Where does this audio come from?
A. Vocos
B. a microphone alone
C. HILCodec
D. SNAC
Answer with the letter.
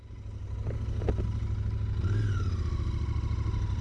B